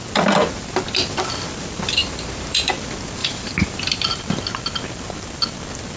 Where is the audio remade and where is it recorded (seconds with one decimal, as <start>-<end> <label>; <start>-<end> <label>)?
0.0-2.0 recorded; 2.0-2.7 remade; 2.7-3.2 recorded; 3.2-4.2 remade; 4.2-6.0 recorded